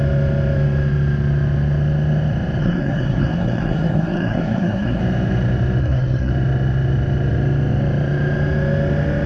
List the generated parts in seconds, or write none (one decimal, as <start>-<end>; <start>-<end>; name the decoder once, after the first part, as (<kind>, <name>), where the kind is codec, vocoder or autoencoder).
2.6-5.0 (codec, SNAC); 5.8-6.3